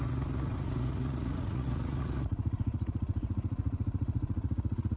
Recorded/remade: remade